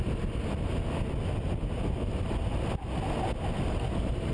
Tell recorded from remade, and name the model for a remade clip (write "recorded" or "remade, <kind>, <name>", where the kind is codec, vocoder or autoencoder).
recorded